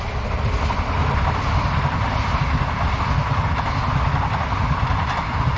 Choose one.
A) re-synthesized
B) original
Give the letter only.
B